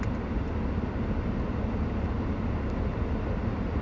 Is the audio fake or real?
real